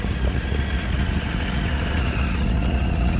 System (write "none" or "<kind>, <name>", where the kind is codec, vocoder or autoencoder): vocoder, Vocos